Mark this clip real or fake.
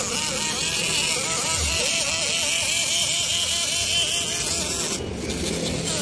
real